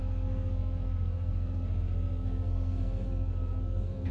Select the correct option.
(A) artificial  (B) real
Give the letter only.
A